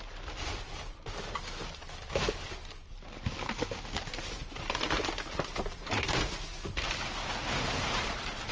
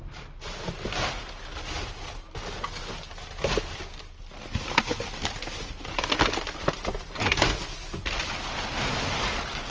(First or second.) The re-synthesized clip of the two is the first